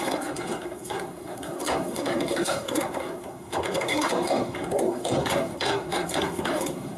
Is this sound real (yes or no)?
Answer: no